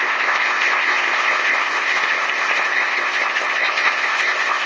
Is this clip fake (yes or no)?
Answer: yes